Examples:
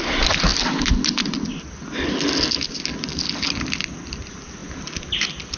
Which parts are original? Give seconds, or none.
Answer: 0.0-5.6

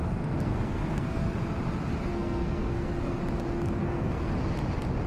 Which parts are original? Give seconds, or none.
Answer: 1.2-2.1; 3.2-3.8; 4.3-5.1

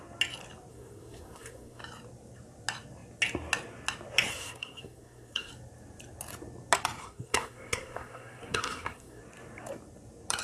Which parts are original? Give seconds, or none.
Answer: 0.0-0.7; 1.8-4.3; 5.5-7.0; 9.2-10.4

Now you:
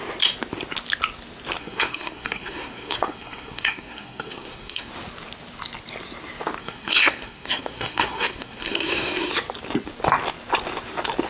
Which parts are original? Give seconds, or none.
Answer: 0.0-1.6; 4.9-6.6; 9.3-11.3

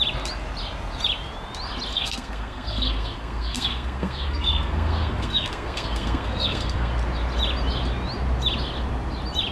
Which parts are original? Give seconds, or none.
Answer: 0.0-1.9; 6.9-9.5

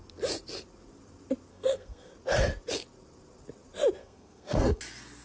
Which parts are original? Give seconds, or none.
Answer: 0.0-1.5; 2.1-4.0; 4.8-5.2